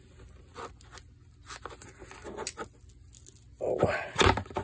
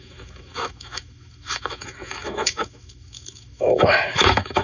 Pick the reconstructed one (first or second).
second